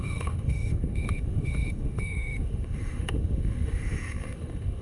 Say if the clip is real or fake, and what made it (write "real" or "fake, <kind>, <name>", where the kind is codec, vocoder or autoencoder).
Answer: fake, autoencoder, DAC-VAE